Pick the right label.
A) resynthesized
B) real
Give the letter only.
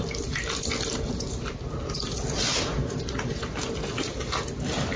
B